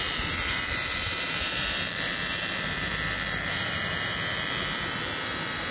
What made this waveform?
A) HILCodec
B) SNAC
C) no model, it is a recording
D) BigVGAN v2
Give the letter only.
D